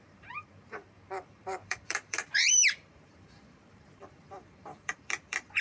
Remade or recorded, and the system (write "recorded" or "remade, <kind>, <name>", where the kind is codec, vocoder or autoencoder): remade, vocoder, BigVGAN v2